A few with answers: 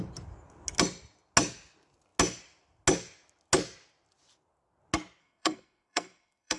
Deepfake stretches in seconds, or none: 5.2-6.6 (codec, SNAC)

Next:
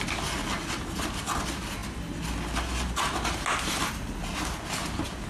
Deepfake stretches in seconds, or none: none

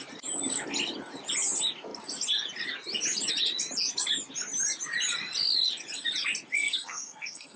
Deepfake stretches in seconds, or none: 6.5-7.6 (codec, SNAC)

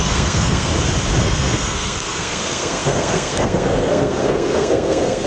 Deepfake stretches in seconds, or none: 0.0-0.7 (codec, SNAC); 1.2-5.3

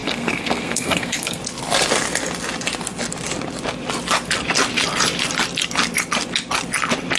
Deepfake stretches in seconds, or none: 0.0-1.4 (codec, SNAC)

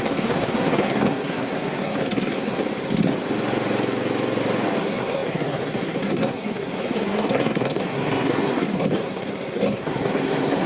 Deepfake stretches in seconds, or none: 0.0-2.6 (codec, SNAC); 4.8-10.7

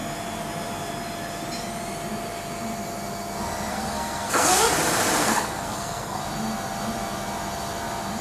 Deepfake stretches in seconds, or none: 3.7-4.6 (codec, SNAC); 5.2-6.2

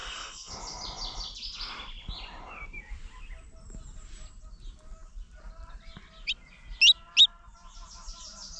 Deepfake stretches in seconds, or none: 0.0-0.5 (codec, SNAC)